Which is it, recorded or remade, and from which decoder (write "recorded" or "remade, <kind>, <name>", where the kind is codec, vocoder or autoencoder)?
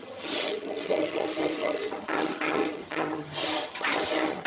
remade, vocoder, HiFi-GAN